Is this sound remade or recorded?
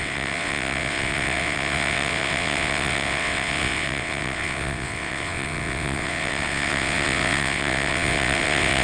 remade